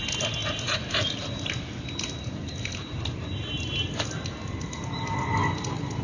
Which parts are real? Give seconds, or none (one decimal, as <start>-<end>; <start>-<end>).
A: 0.0-6.0